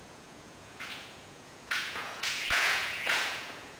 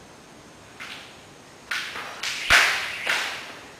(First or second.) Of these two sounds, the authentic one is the second